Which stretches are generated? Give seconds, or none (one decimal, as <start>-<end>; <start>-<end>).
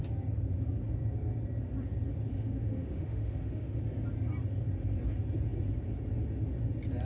2.3-3.8